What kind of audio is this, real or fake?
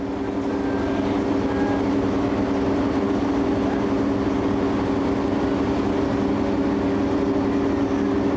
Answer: real